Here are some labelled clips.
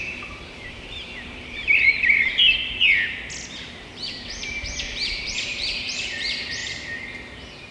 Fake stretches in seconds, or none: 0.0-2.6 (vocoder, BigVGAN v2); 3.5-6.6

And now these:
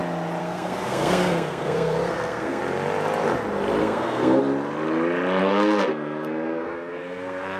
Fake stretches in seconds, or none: 0.4-2.6 (codec, SNAC); 3.8-4.4; 5.4-7.6

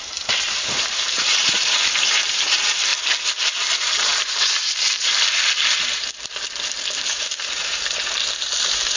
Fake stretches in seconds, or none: 0.0-2.9 (vocoder, BigVGAN v2); 3.4-9.0

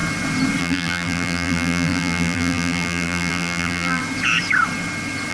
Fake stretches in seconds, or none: 0.6-4.0 (vocoder, BigVGAN v2)

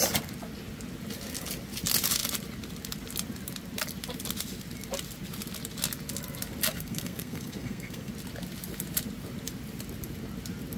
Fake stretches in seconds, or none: 6.7-8.1 (codec, SNAC)